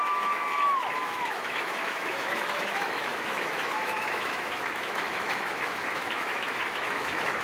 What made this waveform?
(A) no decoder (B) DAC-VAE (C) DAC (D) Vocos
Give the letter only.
B